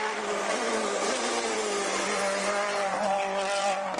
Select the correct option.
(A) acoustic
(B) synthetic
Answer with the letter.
B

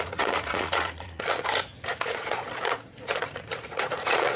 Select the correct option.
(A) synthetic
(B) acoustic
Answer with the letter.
A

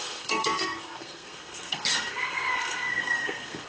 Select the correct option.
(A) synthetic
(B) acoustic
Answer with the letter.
A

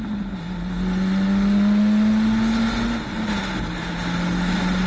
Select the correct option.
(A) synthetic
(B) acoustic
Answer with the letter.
B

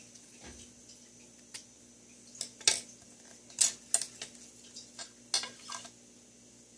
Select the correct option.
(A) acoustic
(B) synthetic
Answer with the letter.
A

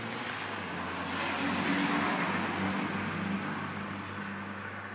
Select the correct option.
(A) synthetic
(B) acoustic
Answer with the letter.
B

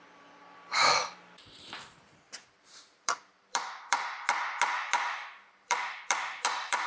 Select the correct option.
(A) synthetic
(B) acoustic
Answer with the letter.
A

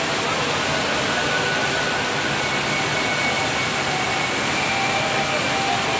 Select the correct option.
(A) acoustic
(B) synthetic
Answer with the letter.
A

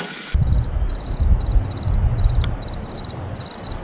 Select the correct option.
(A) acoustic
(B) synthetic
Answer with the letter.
A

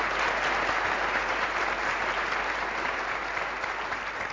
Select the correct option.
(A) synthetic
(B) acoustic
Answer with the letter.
B